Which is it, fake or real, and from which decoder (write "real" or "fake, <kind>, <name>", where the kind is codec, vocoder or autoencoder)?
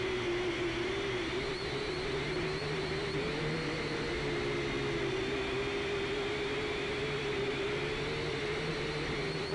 real